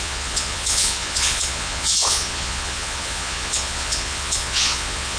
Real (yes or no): no